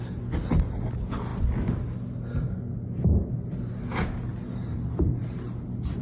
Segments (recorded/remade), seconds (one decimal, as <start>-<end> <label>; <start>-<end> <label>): 0.0-6.0 recorded